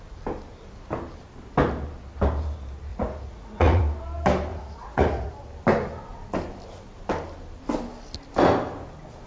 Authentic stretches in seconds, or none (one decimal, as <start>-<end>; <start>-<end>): 0.0-2.9; 3.8-4.5; 5.3-9.3